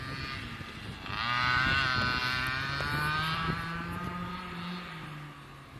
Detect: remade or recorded recorded